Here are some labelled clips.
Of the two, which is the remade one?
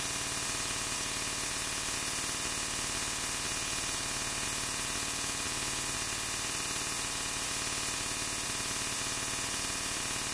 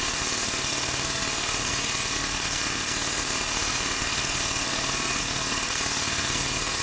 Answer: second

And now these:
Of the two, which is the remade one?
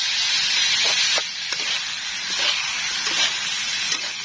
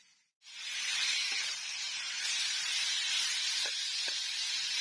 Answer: second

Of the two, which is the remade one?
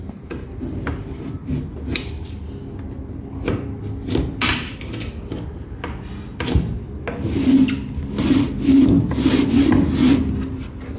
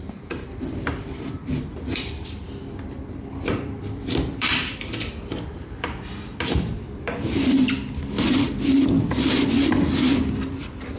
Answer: second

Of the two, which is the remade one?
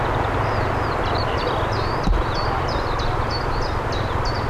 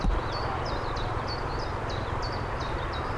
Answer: first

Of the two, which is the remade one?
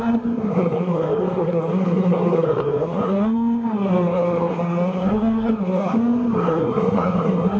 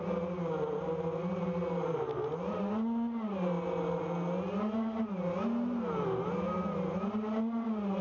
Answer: first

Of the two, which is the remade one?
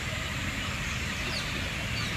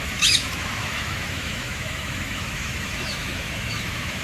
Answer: second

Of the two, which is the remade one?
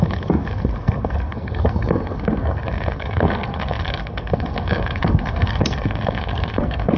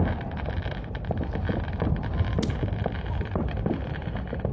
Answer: first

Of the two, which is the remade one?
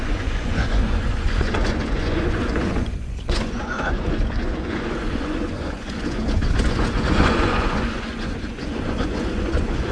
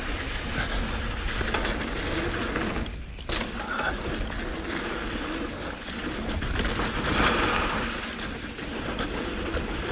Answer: first